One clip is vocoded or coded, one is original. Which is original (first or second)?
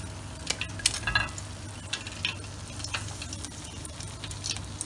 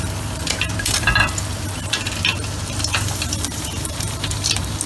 first